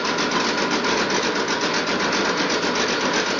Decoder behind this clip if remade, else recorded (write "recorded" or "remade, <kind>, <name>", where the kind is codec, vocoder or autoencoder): recorded